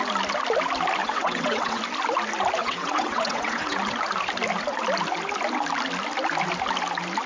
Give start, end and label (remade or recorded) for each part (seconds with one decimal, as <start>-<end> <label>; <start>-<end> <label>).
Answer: 0.0-1.0 recorded; 1.0-1.8 remade; 1.8-2.6 recorded; 2.6-3.8 remade; 3.8-7.3 recorded